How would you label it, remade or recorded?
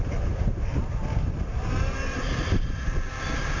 remade